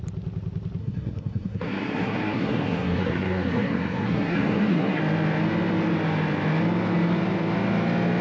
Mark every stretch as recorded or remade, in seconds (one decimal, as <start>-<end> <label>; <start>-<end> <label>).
0.0-0.8 recorded; 0.8-5.0 remade; 5.0-8.2 recorded